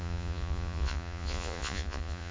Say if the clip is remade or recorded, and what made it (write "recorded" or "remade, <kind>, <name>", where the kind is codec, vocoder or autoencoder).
remade, vocoder, Vocos